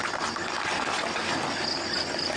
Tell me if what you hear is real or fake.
real